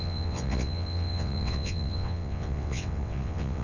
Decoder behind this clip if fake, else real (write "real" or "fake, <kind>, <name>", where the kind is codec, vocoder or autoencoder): fake, vocoder, WaveNeXt